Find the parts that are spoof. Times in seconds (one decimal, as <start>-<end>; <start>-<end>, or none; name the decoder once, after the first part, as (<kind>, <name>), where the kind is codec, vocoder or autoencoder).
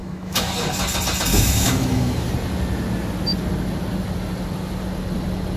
0.0-0.5 (autoencoder, DAC-VAE); 1.3-2.3